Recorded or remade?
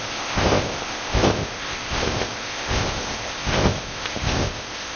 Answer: remade